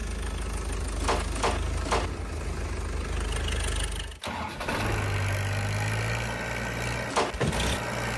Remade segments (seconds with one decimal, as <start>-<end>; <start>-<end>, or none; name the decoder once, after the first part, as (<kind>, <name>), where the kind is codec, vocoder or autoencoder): none